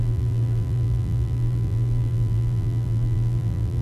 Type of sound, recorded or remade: remade